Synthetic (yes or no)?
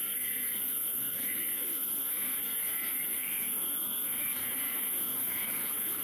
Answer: yes